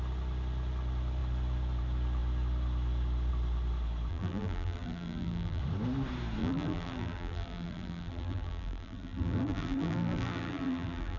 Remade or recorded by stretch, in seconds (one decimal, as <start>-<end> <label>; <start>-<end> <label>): 0.0-4.1 recorded; 4.1-5.6 remade; 5.6-6.4 recorded; 6.4-11.2 remade